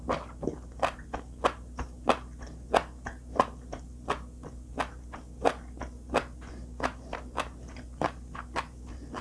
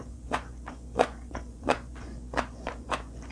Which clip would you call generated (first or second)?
second